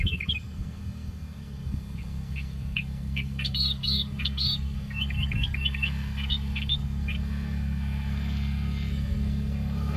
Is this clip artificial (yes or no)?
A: yes